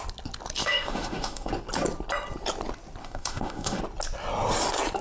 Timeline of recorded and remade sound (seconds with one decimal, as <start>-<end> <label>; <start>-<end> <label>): 0.0-0.6 recorded; 0.6-1.5 remade; 1.5-3.0 recorded; 3.0-3.8 remade; 3.8-5.0 recorded